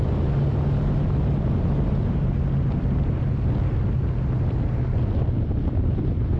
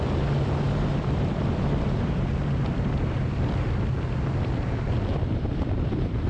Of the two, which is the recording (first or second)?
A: first